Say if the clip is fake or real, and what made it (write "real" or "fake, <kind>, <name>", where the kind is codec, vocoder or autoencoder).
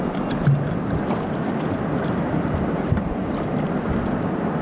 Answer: real